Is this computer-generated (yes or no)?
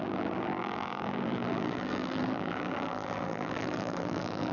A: yes